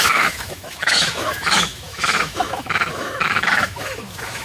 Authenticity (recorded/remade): remade